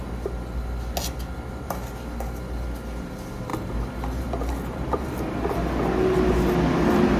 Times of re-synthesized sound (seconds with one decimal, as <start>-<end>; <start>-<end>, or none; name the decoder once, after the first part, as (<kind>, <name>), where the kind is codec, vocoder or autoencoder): none